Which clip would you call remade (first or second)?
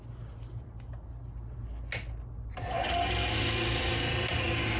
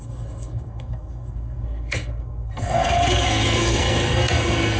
second